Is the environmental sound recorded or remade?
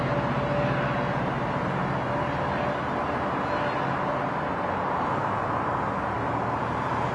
recorded